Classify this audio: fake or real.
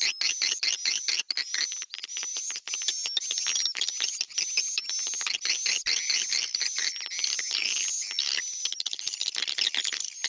real